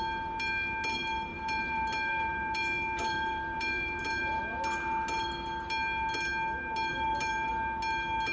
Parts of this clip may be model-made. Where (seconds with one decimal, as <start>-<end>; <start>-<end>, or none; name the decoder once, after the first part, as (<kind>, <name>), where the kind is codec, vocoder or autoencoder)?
1.3-4.4 (vocoder, BigVGAN v2); 6.9-7.5